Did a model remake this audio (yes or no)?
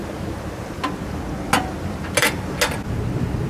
no